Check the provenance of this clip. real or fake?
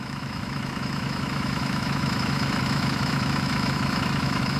fake